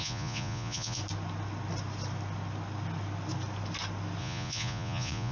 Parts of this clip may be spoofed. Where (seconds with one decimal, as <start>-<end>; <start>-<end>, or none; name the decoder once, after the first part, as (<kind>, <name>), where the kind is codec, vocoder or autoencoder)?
0.0-1.0 (vocoder, Vocos); 4.2-5.3